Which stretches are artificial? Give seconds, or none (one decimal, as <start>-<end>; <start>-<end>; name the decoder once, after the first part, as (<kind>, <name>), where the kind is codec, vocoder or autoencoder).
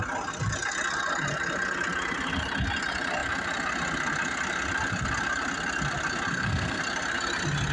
6.3-6.8 (codec, SNAC)